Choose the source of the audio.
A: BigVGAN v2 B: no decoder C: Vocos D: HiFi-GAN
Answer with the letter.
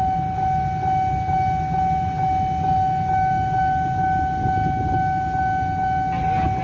B